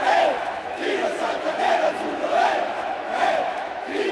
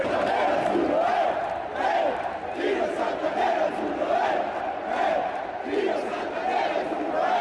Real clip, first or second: second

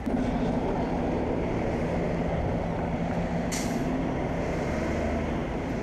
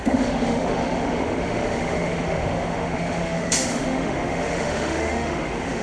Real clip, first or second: first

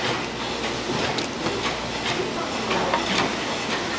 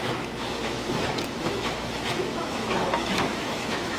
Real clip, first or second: first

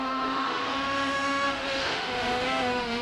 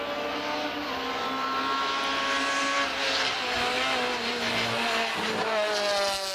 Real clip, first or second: second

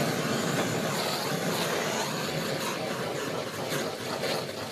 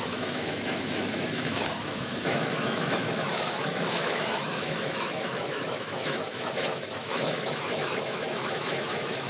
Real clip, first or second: first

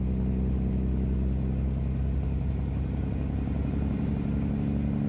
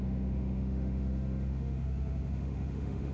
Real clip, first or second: first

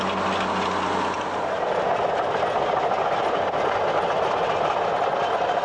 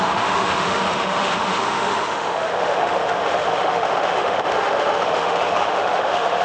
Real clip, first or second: first